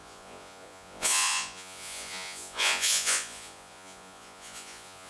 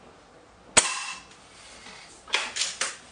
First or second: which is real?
second